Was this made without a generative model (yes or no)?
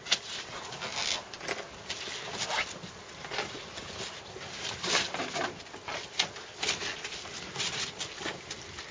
yes